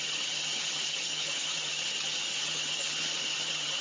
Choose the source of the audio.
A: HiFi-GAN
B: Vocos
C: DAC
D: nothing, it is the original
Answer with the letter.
A